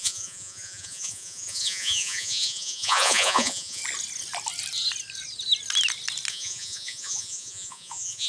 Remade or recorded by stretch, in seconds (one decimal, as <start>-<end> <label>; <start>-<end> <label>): 0.0-3.8 remade; 3.8-6.3 recorded; 6.3-8.3 remade